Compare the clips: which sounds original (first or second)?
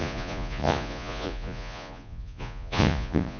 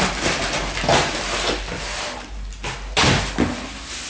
second